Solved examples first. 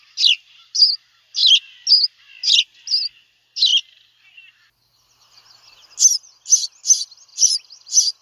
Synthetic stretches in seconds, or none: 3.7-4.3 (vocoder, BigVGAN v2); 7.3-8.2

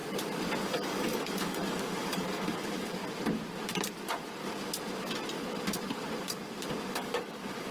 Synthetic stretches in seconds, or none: 0.6-3.0 (codec, DAC); 6.9-7.7